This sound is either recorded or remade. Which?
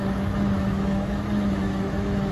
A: remade